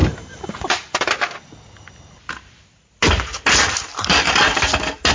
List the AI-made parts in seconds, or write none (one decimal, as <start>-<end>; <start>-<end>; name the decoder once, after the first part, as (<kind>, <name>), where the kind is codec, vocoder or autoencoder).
none